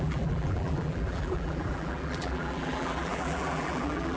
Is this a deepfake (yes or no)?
yes